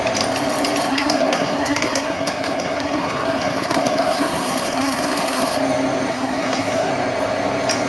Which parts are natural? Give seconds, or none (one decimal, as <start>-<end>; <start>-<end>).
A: 0.0-0.9; 5.6-6.1; 6.9-7.9